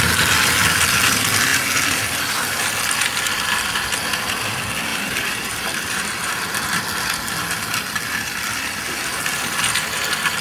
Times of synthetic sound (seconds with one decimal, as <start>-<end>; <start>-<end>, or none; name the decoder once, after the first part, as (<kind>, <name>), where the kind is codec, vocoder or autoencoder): 4.9-6.8 (vocoder, BigVGAN v2)